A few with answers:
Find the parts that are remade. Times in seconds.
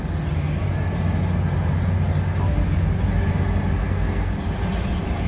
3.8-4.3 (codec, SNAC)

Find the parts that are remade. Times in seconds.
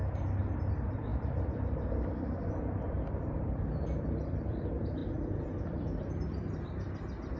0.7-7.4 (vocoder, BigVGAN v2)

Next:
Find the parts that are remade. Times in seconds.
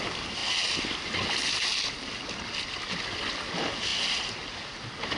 none